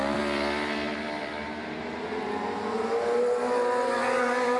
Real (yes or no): yes